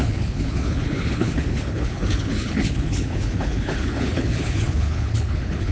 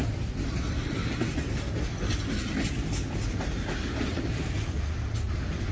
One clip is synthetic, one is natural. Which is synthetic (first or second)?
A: first